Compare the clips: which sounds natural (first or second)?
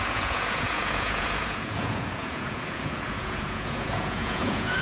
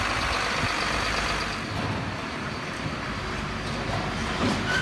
second